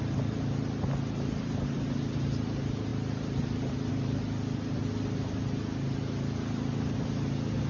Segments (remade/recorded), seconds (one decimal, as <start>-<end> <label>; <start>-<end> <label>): 0.0-7.7 recorded